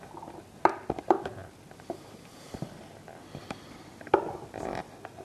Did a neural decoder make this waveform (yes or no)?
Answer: no